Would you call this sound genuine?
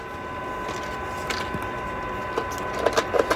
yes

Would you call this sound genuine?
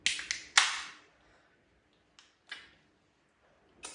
yes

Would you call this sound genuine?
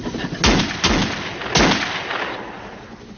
yes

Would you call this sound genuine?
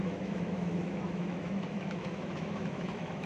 no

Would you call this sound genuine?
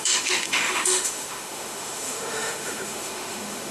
no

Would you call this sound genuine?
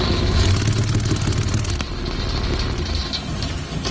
yes